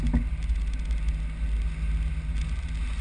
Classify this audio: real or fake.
real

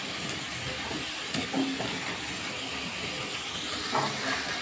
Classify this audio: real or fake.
real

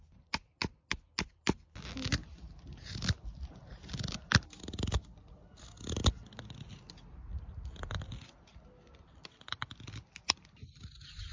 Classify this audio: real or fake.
real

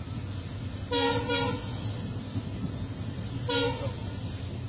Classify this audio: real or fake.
real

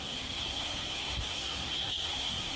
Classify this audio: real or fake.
fake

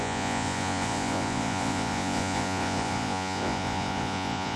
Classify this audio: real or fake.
fake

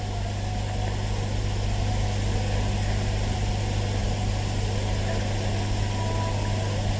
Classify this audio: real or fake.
real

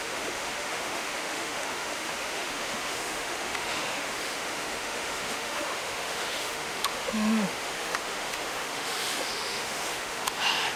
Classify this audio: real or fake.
fake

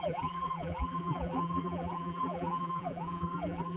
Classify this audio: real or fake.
fake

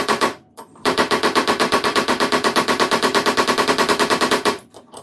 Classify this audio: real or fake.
fake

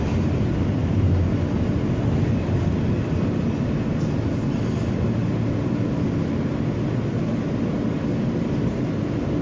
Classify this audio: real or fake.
real